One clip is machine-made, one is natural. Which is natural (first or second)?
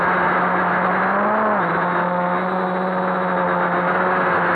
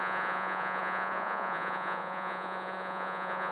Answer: first